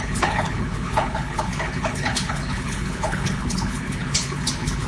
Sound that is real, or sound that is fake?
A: fake